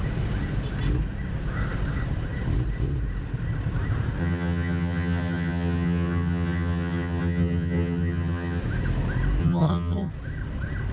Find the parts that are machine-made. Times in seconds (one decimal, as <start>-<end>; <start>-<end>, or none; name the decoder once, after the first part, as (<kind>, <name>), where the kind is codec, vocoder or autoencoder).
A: 4.2-8.6 (vocoder, HiFi-GAN); 9.4-10.1

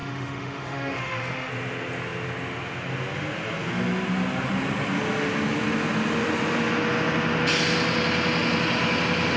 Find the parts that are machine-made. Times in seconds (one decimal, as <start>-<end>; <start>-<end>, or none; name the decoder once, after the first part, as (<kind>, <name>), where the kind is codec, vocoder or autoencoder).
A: 0.0-1.5 (autoencoder, DAC-VAE)

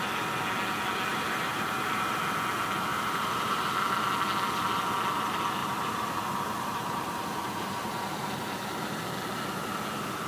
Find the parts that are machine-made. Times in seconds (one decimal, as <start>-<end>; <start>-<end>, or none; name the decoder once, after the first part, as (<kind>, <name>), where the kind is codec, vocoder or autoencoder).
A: 1.1-2.2 (vocoder, BigVGAN v2); 2.9-3.7; 5.6-8.0

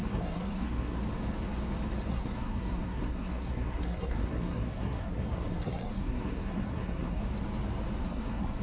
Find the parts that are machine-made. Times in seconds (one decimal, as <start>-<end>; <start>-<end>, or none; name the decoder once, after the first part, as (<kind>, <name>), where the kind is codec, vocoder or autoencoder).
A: 0.0-1.0 (codec, SNAC); 2.1-7.2; 8.0-8.6

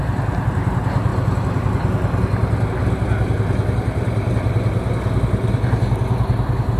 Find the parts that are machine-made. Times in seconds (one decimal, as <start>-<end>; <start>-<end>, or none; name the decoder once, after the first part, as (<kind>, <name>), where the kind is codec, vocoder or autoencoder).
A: none

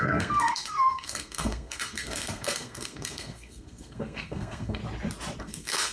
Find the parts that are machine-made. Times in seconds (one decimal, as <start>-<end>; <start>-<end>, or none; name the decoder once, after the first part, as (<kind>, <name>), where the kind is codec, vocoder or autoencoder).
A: 0.0-4.8 (codec, SNAC); 5.4-5.9

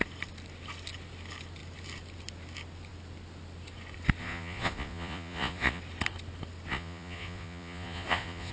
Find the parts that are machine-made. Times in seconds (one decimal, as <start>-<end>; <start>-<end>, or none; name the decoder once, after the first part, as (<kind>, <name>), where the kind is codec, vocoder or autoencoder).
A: 4.2-5.8 (vocoder, Vocos); 6.7-8.5